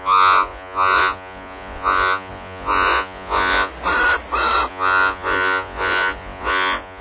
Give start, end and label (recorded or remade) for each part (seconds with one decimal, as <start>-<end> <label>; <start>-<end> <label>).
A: 0.0-3.7 remade; 3.7-4.7 recorded; 4.7-7.0 remade